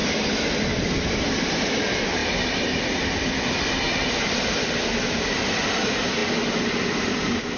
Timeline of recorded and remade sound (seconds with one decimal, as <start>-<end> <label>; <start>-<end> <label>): 0.0-7.6 recorded